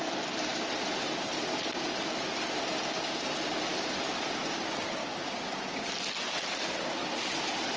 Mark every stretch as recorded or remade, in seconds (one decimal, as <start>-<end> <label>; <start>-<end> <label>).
0.0-5.0 recorded; 5.0-5.9 remade; 5.9-7.8 recorded